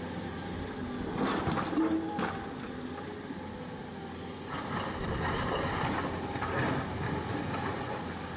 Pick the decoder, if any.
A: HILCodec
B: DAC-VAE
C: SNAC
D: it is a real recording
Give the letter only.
D